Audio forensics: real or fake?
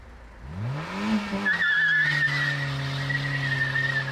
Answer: real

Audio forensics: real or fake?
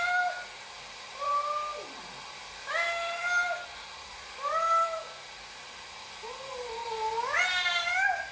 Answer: real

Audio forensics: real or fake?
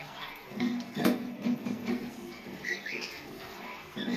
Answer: fake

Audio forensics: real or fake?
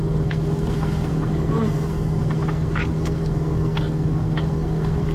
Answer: fake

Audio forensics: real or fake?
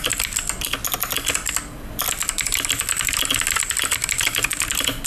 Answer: real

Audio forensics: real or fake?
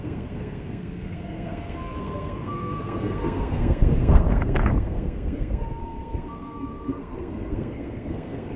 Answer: fake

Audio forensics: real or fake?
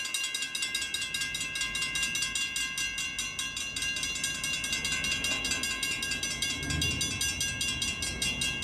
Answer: real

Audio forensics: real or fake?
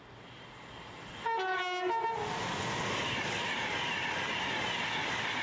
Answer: real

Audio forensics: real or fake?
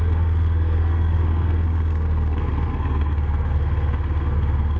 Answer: fake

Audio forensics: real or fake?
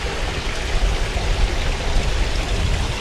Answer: real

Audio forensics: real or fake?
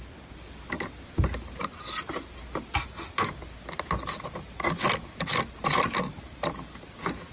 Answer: real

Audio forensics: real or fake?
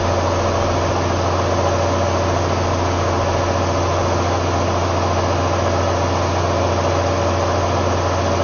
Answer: real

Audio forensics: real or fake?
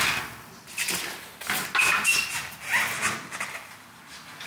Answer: real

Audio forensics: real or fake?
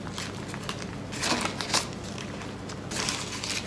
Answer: real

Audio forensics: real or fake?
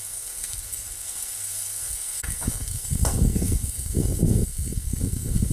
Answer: fake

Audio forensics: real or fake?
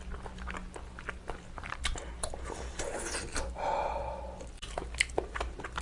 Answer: real